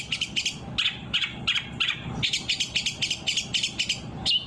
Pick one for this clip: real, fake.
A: real